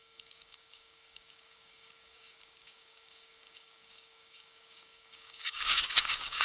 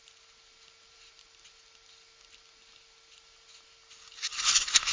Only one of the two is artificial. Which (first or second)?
first